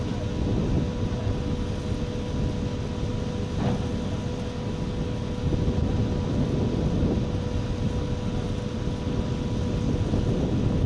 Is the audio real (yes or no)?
yes